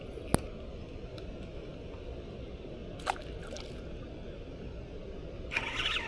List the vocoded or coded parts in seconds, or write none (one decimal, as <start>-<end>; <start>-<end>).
none